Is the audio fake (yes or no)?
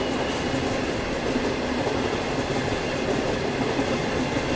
no